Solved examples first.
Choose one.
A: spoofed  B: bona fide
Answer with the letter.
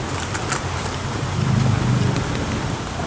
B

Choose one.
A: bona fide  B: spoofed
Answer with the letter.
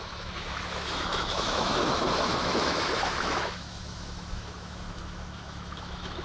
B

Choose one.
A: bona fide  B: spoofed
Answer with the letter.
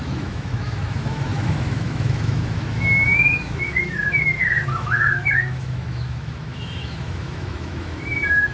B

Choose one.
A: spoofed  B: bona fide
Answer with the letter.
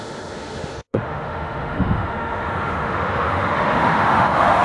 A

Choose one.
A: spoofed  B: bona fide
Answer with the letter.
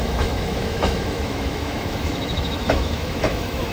A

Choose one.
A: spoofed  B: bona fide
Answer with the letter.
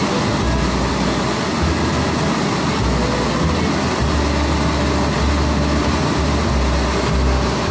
B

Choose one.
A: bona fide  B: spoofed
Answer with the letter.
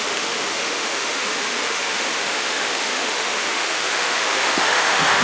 B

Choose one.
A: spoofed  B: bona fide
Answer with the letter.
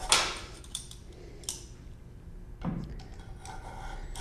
B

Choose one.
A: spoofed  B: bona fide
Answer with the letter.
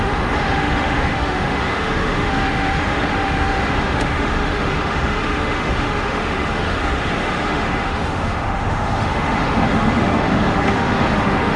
A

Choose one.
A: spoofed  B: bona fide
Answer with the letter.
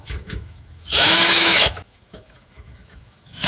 A